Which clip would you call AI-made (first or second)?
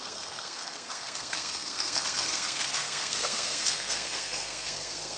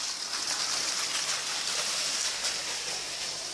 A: first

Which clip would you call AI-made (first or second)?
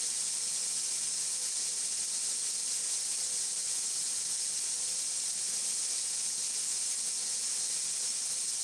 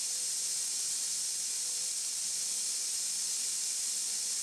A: first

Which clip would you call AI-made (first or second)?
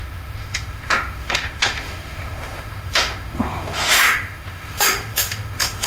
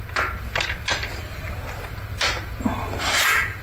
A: first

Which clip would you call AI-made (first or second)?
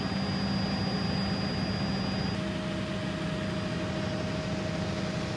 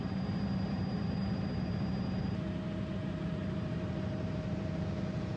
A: second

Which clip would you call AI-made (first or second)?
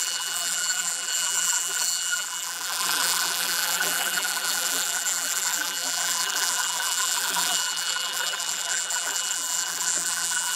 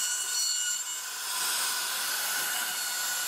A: first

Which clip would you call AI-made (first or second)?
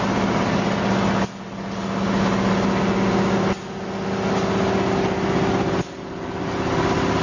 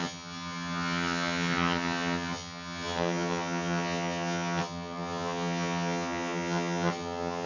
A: second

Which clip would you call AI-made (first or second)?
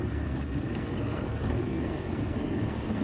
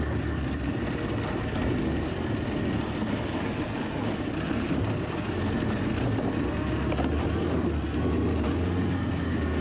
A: first